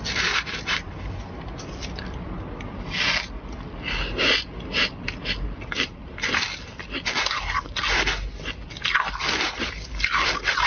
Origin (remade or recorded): recorded